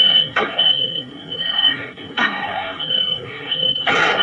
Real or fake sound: fake